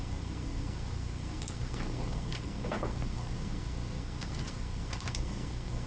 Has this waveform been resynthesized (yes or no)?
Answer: yes